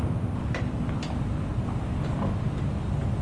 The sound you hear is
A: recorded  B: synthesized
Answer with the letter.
A